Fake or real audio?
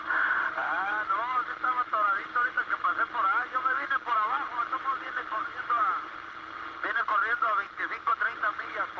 real